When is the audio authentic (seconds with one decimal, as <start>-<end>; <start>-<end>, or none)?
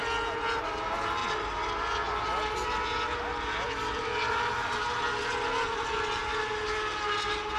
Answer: 0.0-7.6